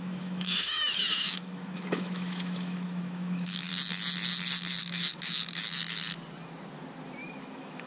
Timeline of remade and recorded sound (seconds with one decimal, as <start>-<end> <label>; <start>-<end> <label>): 0.0-3.7 remade; 3.7-4.8 recorded; 4.8-5.6 remade; 5.6-7.5 recorded; 7.5-7.9 remade